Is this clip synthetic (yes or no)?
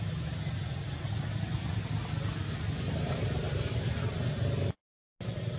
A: no